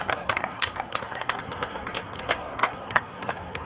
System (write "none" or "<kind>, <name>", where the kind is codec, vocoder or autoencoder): codec, SNAC